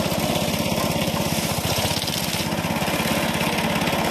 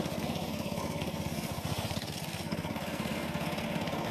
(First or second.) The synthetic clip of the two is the second